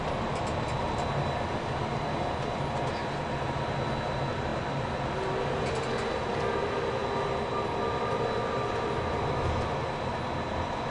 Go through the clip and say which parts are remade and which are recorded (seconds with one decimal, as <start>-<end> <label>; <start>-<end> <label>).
0.0-10.9 recorded